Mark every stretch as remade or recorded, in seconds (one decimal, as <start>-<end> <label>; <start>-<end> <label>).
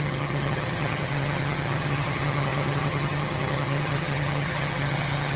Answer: 0.0-5.4 remade